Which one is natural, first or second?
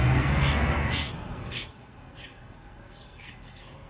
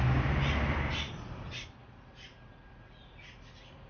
second